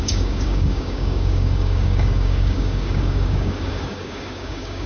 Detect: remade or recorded remade